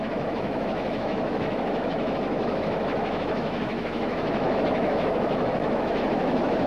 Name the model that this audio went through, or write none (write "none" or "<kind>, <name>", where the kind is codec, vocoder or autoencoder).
autoencoder, DAC-VAE